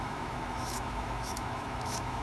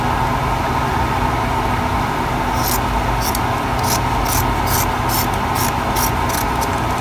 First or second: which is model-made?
first